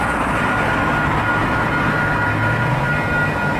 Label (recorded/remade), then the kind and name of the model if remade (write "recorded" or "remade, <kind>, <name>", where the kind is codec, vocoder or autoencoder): recorded